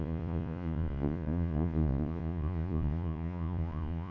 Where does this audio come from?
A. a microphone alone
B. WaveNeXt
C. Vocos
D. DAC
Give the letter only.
C